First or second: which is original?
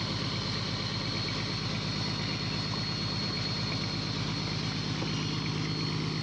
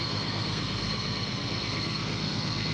first